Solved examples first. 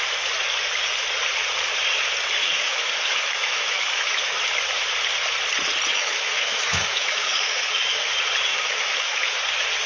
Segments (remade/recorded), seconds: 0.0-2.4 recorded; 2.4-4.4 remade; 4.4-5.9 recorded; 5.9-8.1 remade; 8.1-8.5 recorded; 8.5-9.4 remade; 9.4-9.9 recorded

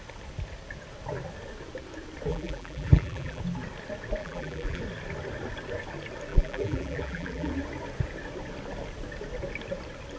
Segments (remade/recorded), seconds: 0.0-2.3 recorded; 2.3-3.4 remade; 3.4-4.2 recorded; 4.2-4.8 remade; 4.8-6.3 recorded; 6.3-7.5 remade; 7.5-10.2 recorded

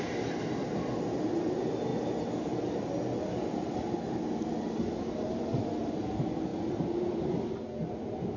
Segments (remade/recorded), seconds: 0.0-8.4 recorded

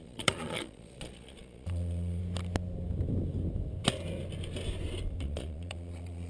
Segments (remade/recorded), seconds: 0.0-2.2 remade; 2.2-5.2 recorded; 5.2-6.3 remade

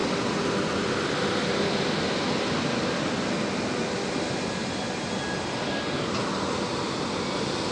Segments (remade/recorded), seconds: 0.0-7.7 recorded

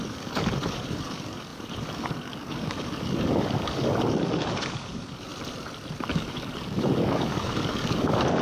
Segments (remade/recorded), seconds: 0.0-5.3 remade; 5.3-6.1 recorded; 6.1-8.4 remade

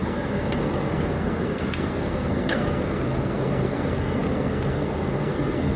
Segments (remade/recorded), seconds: 0.0-5.8 remade

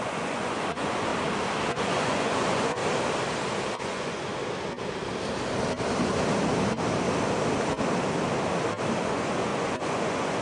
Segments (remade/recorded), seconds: 0.0-1.1 remade; 1.1-1.7 recorded; 1.7-2.8 remade; 2.8-3.8 recorded; 3.8-4.3 remade; 4.3-9.0 recorded; 9.0-10.4 remade